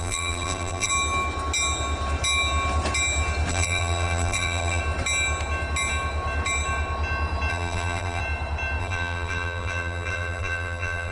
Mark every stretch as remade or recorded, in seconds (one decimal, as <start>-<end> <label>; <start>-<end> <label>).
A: 0.0-0.9 remade; 0.9-3.5 recorded; 3.5-4.8 remade; 4.8-7.5 recorded; 7.5-8.2 remade; 8.2-8.8 recorded; 8.8-11.1 remade

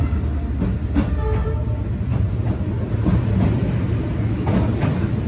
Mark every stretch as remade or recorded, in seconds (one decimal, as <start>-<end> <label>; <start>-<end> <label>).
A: 0.0-5.3 recorded